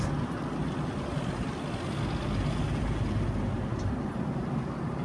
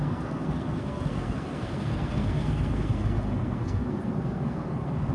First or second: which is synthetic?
second